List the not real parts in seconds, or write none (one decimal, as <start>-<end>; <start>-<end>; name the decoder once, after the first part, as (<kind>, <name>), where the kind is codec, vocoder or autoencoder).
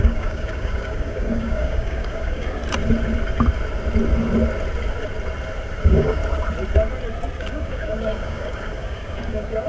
0.0-2.6 (codec, DAC); 5.8-6.2; 7.4-9.7